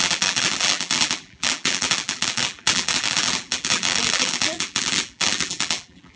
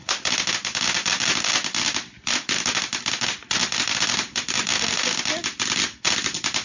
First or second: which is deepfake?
first